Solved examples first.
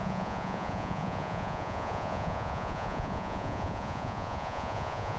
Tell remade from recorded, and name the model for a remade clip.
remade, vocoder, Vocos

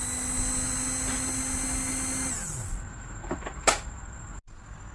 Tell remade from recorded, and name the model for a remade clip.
recorded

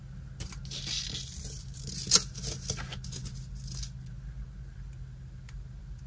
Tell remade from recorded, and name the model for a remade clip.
recorded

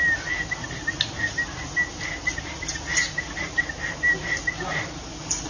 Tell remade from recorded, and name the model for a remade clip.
recorded